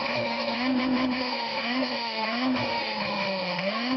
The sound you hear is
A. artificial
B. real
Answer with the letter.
A